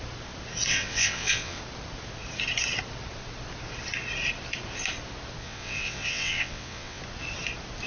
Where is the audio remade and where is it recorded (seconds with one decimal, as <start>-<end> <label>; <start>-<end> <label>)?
0.0-0.7 recorded; 0.7-1.6 remade; 1.6-5.4 recorded; 5.4-7.0 remade; 7.0-7.9 recorded